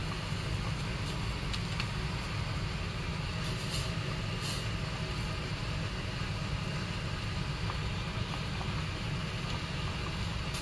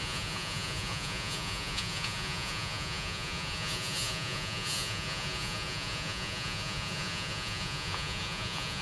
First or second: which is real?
first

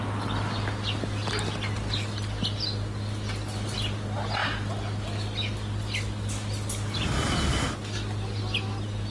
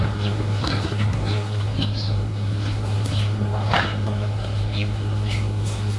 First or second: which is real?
first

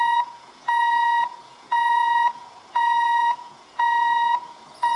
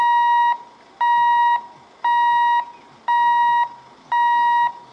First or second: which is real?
second